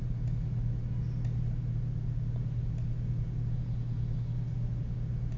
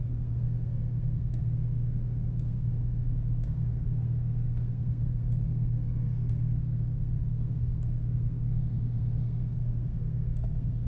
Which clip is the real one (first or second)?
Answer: first